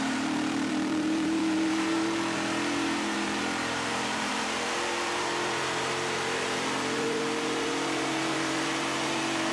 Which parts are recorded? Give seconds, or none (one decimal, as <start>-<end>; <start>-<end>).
none